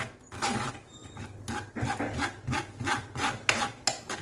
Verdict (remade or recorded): recorded